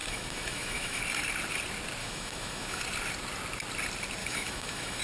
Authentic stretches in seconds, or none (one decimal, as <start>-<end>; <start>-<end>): 1.0-2.0; 2.8-4.2